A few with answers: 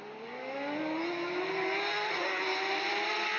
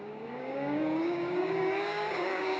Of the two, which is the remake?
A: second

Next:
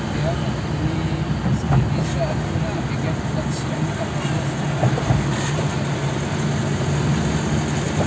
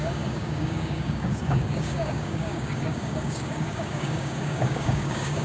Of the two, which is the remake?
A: second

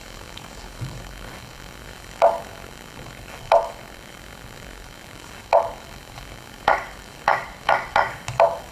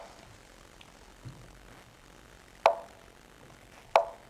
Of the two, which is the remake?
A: first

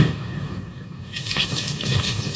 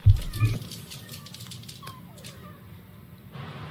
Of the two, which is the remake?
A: first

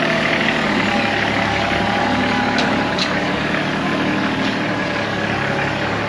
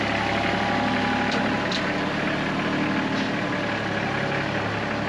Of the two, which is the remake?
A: first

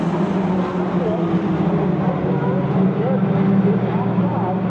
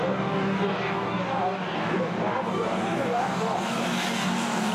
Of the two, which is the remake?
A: second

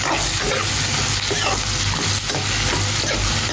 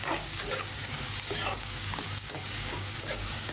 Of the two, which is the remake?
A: second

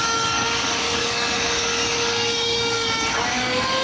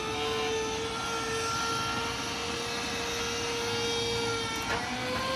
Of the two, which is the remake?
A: first